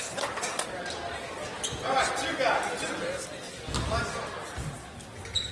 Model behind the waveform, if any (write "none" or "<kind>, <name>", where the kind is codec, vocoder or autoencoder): none